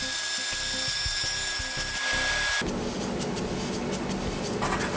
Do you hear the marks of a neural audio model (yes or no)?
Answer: no